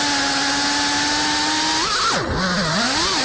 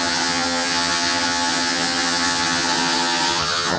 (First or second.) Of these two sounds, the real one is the first